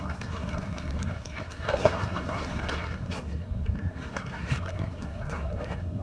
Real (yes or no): no